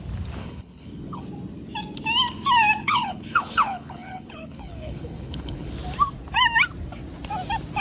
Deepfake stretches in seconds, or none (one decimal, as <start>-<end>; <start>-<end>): 0.4-1.2; 2.8-5.7